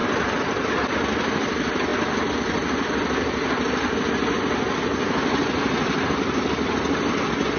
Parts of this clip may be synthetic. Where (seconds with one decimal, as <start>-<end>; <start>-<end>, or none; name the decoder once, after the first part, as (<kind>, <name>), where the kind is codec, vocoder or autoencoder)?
none